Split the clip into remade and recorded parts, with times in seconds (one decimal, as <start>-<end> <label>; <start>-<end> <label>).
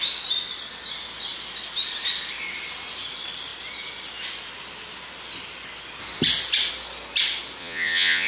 0.0-7.6 recorded; 7.6-8.3 remade